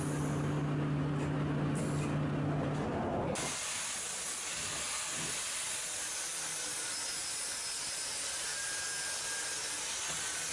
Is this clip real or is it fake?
real